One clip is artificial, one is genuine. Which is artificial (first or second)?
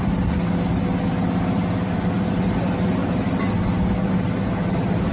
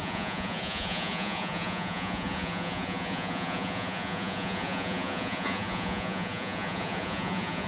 second